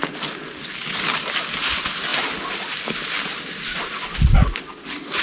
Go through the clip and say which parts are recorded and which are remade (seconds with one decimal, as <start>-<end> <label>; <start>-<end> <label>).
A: 0.0-5.2 recorded